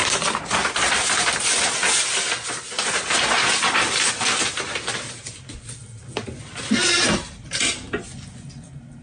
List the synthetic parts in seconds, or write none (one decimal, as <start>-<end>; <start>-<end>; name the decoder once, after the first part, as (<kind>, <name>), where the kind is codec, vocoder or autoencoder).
none